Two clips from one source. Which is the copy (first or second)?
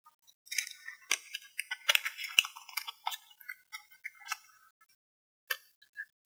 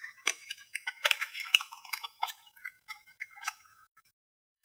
second